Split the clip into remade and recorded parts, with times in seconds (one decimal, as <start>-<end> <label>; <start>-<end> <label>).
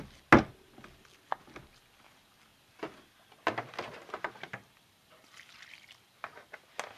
0.0-7.0 recorded